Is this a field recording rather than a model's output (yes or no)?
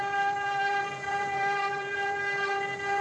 no